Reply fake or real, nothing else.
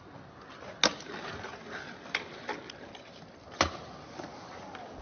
real